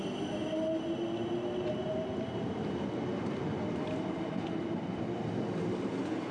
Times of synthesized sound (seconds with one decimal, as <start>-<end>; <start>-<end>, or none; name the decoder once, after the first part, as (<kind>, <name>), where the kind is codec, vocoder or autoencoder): none

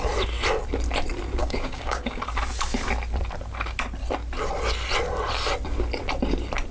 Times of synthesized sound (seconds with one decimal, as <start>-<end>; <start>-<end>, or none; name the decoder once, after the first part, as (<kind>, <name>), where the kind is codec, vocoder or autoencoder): 1.4-2.2 (codec, DAC)

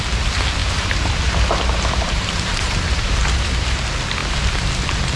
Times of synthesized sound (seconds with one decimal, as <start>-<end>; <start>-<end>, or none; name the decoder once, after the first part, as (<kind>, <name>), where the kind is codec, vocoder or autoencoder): 0.6-3.7 (vocoder, BigVGAN v2)

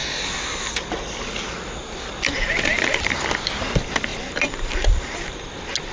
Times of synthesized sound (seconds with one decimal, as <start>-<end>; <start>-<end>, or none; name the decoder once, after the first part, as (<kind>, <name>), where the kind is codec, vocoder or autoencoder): 4.1-5.5 (vocoder, BigVGAN v2)

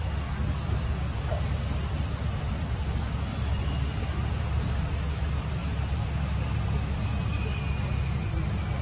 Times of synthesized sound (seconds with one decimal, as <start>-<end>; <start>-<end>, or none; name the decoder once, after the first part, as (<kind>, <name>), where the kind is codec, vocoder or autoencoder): 0.0-3.3 (vocoder, BigVGAN v2); 4.0-5.6; 6.9-8.8